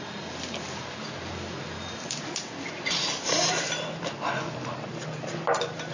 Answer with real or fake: real